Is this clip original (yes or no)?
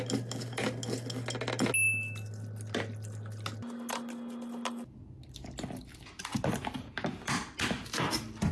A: yes